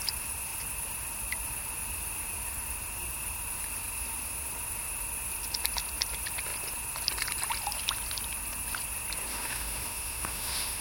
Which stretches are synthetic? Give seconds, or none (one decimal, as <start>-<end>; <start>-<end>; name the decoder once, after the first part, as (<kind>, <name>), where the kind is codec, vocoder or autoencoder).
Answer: 9.3-10.8 (autoencoder, DAC-VAE)